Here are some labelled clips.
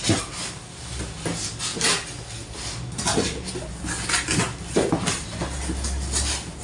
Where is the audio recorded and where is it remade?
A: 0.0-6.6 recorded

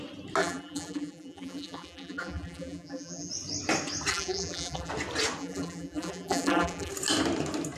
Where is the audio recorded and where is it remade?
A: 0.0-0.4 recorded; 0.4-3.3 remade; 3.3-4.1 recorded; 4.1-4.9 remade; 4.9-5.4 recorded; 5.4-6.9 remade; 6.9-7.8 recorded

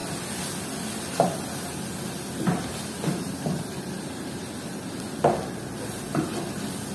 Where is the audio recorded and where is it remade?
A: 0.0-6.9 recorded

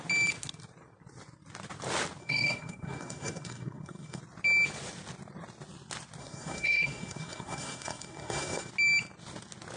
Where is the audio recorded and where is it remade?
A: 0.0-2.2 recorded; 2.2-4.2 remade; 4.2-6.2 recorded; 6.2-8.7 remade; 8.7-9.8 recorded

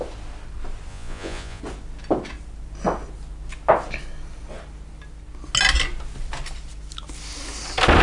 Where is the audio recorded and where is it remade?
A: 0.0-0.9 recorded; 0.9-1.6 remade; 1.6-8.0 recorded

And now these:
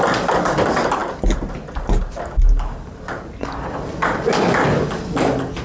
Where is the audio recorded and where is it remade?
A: 0.0-5.6 recorded

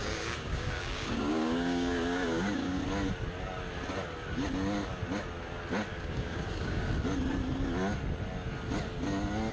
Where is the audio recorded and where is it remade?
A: 0.0-2.8 remade; 2.8-5.9 recorded; 5.9-6.9 remade; 6.9-9.5 recorded

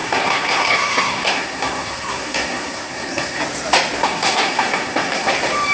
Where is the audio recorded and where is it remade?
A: 0.0-3.4 remade; 3.4-4.0 recorded; 4.0-5.3 remade; 5.3-5.7 recorded